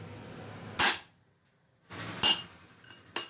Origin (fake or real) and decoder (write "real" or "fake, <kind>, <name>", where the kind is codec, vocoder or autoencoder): real